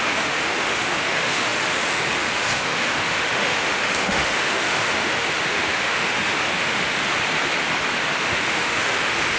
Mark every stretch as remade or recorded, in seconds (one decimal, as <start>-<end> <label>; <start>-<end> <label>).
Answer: 0.0-7.0 remade; 7.0-8.2 recorded; 8.2-9.4 remade

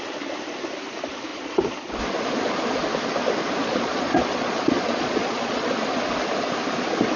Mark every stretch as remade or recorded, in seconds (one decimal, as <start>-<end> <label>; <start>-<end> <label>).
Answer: 0.0-1.3 recorded; 1.3-2.0 remade; 2.0-3.6 recorded; 3.6-5.7 remade; 5.7-7.2 recorded

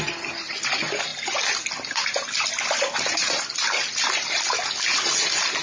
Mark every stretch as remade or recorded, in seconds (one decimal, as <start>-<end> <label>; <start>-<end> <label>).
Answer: 0.0-5.6 recorded

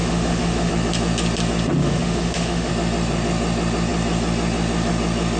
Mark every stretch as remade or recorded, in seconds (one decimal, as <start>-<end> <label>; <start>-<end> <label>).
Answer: 0.0-0.7 remade; 0.7-1.8 recorded; 1.8-2.7 remade; 2.7-5.4 recorded